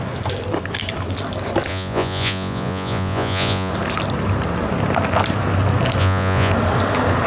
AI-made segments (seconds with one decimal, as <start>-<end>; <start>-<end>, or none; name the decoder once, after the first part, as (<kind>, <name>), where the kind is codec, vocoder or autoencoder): 1.7-3.7 (vocoder, Vocos); 6.0-6.5